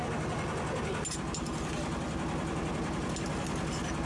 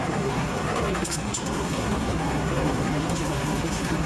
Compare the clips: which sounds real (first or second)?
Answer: first